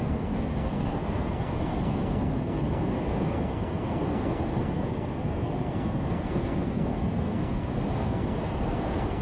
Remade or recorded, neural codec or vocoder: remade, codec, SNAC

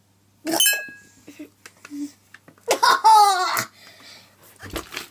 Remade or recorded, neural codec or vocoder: recorded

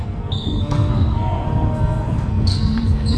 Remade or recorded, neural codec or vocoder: remade, codec, SNAC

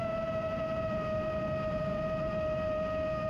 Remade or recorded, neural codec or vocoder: remade, vocoder, BigVGAN v2